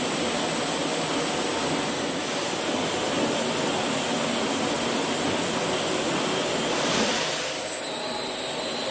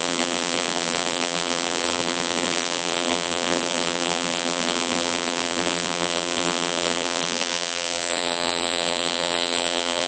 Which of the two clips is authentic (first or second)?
first